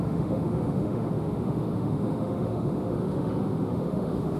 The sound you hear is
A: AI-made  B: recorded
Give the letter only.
A